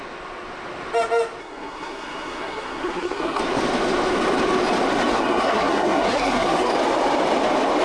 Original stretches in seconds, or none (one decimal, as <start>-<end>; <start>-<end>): 0.0-1.4; 3.4-5.1; 6.7-7.8